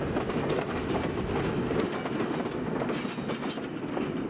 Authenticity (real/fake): real